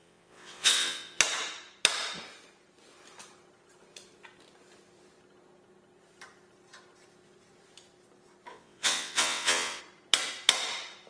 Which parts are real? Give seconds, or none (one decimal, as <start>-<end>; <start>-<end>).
1.2-8.5; 9.8-11.1